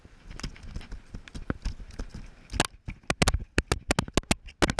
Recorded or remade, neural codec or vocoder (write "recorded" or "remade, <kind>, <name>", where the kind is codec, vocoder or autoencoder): recorded